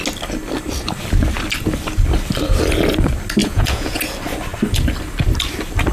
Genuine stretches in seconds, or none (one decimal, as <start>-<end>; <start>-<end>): 0.0-3.4; 4.0-5.9